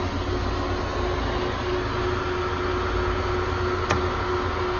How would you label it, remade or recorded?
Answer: recorded